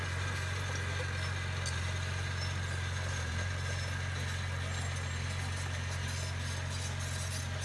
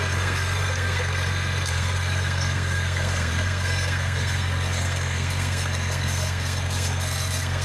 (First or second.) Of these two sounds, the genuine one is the first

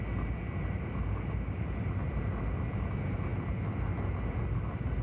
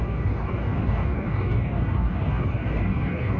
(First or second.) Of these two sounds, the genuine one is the first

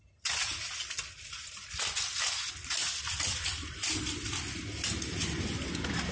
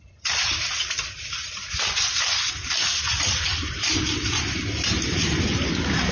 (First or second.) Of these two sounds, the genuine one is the first